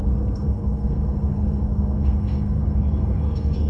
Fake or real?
fake